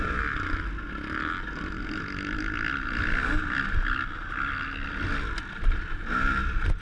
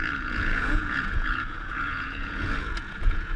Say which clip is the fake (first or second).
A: second